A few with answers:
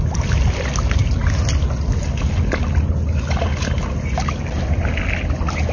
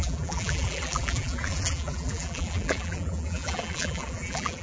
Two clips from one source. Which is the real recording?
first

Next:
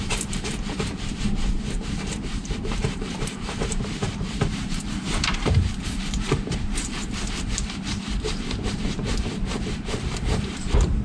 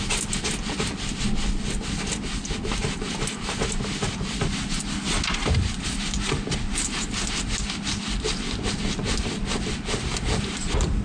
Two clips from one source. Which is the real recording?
second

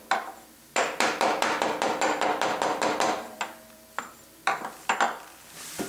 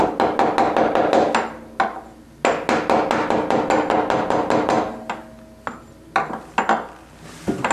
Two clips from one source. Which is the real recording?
second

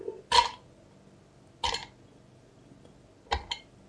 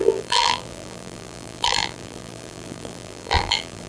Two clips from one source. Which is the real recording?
first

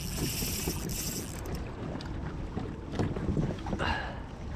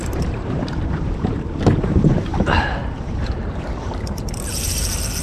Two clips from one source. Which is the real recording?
first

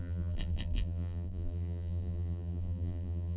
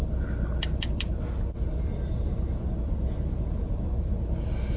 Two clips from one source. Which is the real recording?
second